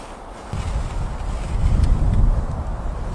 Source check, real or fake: real